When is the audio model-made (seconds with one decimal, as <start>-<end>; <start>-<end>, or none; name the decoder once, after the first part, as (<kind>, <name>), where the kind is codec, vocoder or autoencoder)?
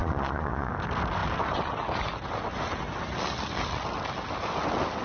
0.0-0.7 (vocoder, Vocos)